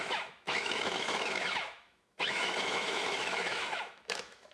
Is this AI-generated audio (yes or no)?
yes